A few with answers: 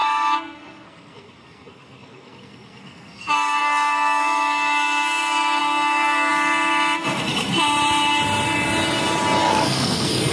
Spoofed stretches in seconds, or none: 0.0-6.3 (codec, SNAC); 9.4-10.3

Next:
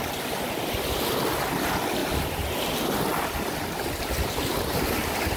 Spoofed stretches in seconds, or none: none

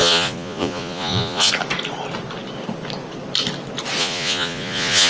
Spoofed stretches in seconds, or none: 0.0-1.5 (vocoder, Vocos); 4.0-5.1

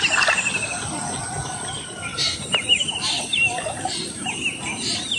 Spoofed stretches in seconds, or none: 2.1-2.9 (vocoder, BigVGAN v2)